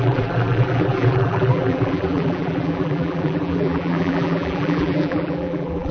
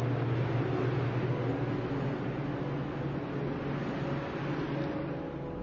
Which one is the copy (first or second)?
first